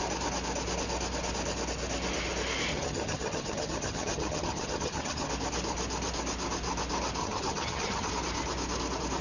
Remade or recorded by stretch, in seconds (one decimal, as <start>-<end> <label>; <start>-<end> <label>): 0.0-2.7 recorded; 2.7-5.3 remade; 5.3-7.2 recorded; 7.2-8.1 remade; 8.1-9.2 recorded